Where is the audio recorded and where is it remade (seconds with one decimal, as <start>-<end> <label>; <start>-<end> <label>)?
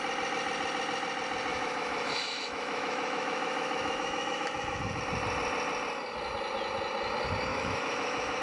0.0-1.5 recorded; 1.5-5.0 remade; 5.0-7.5 recorded; 7.5-8.4 remade